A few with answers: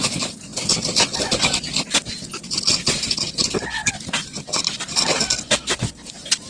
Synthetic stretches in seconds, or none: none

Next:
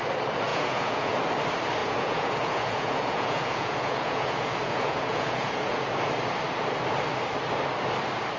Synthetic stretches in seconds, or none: 0.5-1.2 (vocoder, Vocos); 1.8-6.0